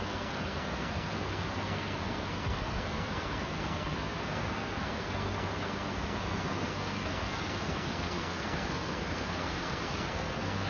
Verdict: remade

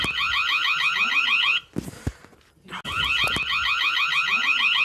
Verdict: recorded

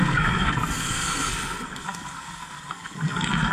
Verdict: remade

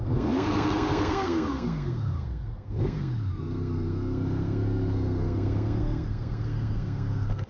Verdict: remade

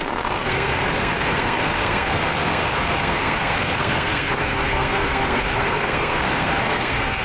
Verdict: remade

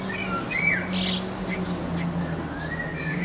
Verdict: recorded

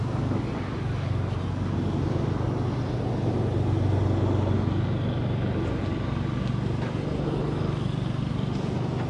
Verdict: recorded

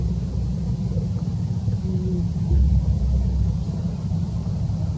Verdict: recorded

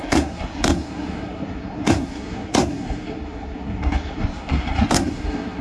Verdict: remade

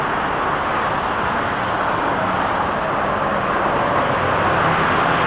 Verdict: recorded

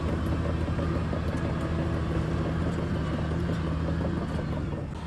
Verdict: recorded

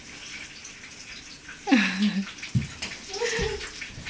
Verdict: recorded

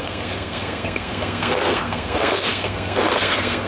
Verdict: remade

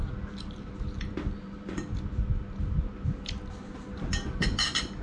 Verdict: recorded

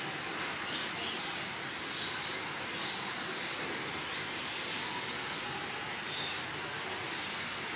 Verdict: recorded